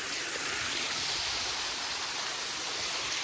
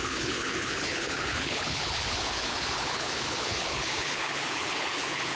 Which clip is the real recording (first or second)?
first